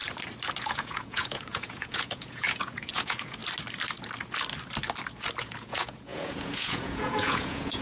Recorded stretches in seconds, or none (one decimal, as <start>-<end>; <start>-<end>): 0.0-0.6; 3.4-5.4